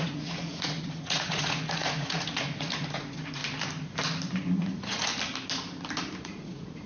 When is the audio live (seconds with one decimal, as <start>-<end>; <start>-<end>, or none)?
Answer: 3.4-4.6; 5.1-6.2